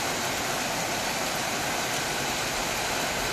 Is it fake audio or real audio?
real